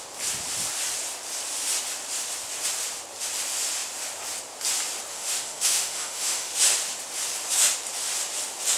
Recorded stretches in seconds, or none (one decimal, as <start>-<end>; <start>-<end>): 0.0-5.1; 6.5-8.8